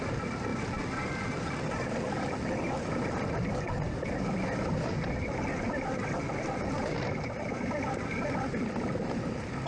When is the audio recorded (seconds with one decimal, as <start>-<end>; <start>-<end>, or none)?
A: 0.0-9.7